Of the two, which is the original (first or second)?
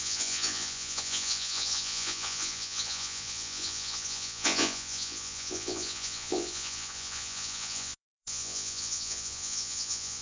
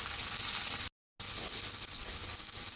second